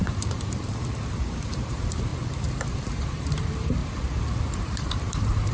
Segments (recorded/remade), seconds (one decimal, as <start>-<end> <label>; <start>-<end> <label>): 0.0-3.8 remade; 3.8-4.4 recorded; 4.4-5.5 remade

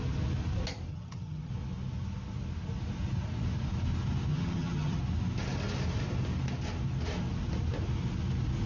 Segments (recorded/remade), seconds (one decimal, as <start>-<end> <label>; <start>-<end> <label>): 0.0-0.9 recorded; 0.9-1.5 remade; 1.5-4.3 recorded; 4.3-5.0 remade; 5.0-8.7 recorded

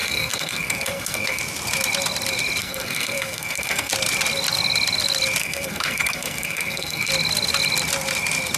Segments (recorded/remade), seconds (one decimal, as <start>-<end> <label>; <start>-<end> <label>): 0.0-1.4 remade; 1.4-2.6 recorded; 2.6-3.9 remade; 3.9-5.4 recorded; 5.4-7.1 remade; 7.1-8.6 recorded

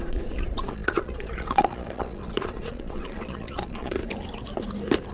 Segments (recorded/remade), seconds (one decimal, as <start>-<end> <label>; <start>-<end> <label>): 0.0-4.0 remade; 4.0-5.1 recorded

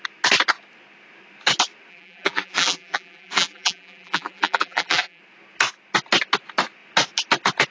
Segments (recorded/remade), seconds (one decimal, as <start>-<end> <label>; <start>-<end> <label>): 0.0-1.9 recorded; 1.9-5.2 remade; 5.2-7.7 recorded

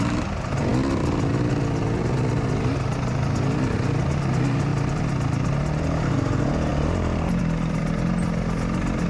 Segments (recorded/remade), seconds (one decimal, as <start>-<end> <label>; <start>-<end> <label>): 0.0-6.7 recorded; 6.7-7.4 remade; 7.4-9.1 recorded

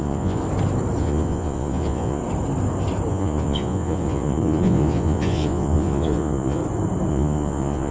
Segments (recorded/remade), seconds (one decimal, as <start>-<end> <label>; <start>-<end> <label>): 0.0-0.4 remade; 0.4-1.0 recorded; 1.0-2.2 remade; 2.2-3.1 recorded; 3.1-6.6 remade; 6.6-7.1 recorded; 7.1-7.9 remade

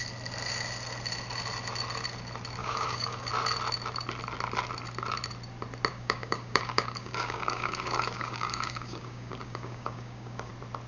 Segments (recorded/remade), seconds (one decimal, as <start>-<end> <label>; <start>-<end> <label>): 0.0-2.6 recorded; 2.6-3.3 remade; 3.3-5.9 recorded; 5.9-10.5 remade; 10.5-10.9 recorded